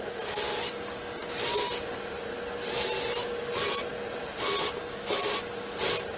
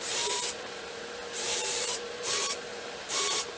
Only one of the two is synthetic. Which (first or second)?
second